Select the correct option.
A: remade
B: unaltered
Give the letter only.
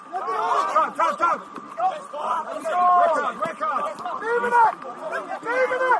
A